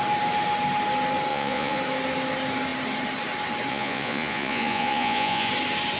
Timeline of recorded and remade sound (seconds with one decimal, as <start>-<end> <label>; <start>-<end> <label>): 0.0-1.3 recorded; 1.3-1.8 remade; 1.8-3.7 recorded; 3.7-5.5 remade; 5.5-6.0 recorded